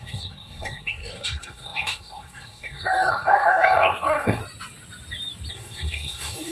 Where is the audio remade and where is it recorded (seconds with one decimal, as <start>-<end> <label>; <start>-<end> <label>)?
0.0-4.4 remade; 4.4-5.5 recorded; 5.5-6.5 remade